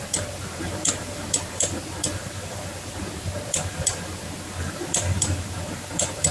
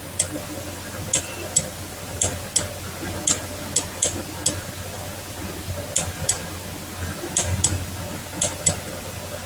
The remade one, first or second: first